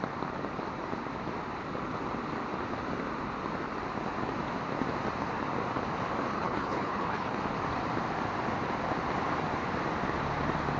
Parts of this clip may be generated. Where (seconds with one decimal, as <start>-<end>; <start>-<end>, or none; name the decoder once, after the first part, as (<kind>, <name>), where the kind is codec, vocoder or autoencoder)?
6.3-7.4 (codec, HILCodec)

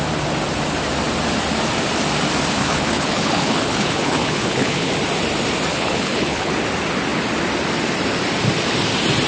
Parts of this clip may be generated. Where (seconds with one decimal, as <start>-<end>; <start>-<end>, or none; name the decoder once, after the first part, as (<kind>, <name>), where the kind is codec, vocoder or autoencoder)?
2.6-4.9 (codec, HILCodec); 5.7-6.5

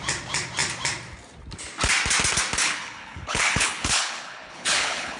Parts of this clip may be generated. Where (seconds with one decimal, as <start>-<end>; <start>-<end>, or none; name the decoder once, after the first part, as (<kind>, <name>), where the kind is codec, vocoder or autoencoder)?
2.6-5.2 (codec, HILCodec)

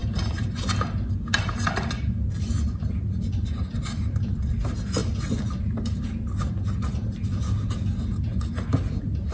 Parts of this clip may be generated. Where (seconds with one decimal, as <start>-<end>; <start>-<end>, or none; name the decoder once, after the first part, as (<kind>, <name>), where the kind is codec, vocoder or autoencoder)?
none

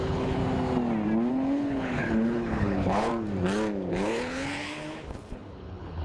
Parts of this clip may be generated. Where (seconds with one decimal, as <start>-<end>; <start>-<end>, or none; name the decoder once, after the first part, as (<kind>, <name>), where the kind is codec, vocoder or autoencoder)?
0.0-0.4 (codec, HILCodec); 1.3-3.1; 3.9-6.0

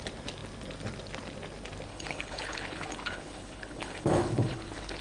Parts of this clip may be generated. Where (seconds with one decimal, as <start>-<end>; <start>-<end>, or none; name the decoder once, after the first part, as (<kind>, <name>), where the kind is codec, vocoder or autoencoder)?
1.9-5.0 (codec, HILCodec)

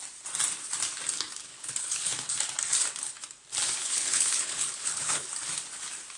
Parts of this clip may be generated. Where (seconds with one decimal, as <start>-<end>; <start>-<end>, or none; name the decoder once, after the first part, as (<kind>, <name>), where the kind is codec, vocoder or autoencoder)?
1.5-2.3 (codec, HILCodec); 3.8-5.3